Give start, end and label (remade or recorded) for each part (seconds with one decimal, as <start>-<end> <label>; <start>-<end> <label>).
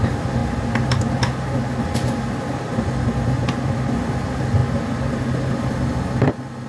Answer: 0.0-6.7 recorded